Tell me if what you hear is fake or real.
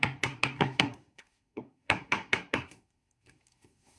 fake